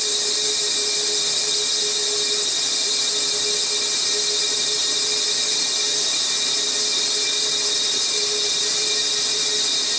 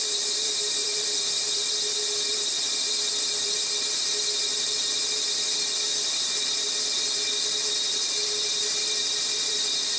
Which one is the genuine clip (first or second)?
first